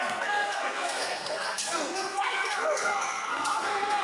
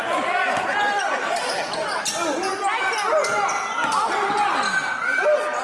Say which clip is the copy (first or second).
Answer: first